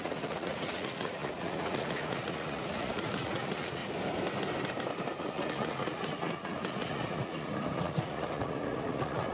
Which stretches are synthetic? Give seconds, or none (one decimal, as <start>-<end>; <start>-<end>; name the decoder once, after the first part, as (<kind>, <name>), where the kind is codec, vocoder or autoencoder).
0.0-3.8 (vocoder, Vocos); 5.2-9.3